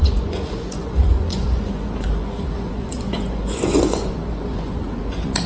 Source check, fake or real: fake